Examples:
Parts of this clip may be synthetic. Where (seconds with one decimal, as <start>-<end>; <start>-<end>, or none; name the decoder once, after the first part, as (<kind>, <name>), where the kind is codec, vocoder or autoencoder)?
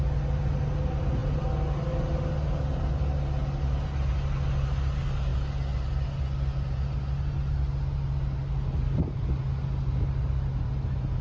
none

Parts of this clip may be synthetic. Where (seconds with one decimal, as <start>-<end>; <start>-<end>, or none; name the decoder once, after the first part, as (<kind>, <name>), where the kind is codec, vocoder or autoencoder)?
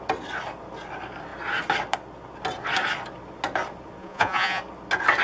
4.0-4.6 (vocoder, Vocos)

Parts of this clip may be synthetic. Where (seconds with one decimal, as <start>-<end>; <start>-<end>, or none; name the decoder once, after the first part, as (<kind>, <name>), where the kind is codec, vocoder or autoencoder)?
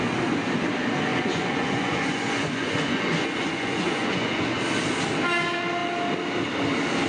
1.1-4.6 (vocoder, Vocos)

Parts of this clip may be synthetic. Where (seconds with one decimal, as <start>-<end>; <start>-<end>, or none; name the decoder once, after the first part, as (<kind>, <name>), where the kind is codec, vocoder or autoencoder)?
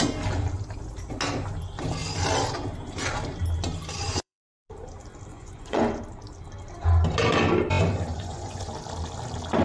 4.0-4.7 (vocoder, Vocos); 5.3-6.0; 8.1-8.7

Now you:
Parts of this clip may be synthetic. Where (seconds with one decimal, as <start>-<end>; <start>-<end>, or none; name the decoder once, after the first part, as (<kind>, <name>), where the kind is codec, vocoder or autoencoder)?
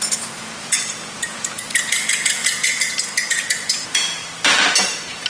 0.0-4.2 (vocoder, Vocos)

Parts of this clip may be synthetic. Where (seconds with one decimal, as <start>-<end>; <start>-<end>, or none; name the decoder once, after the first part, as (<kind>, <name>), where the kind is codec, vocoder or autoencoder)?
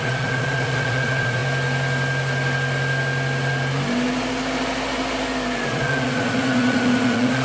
0.0-1.4 (vocoder, Vocos); 5.7-7.4